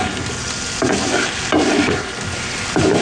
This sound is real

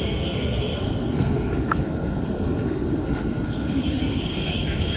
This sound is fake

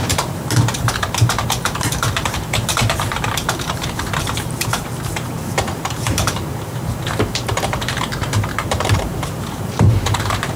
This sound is fake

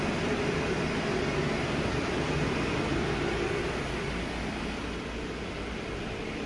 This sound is real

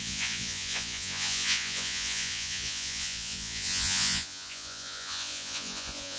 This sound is fake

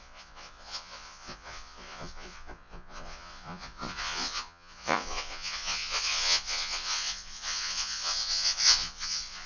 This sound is fake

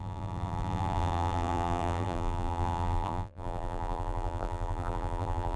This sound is fake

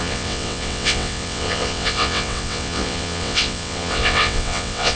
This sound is fake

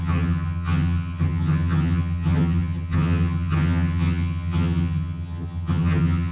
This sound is fake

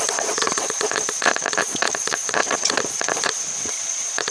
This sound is fake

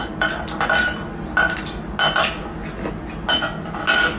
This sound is real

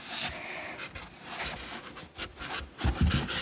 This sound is real